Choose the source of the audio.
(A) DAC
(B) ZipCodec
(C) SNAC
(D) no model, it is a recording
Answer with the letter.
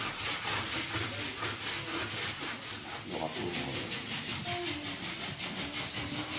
D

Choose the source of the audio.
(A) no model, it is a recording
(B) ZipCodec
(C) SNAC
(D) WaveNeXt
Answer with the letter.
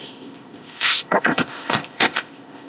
B